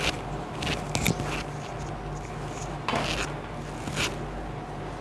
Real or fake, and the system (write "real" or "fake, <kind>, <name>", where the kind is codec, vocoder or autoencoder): real